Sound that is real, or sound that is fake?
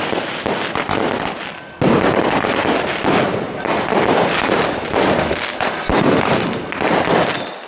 fake